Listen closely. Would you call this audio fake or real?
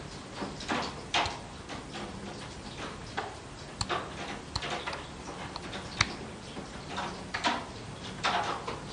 real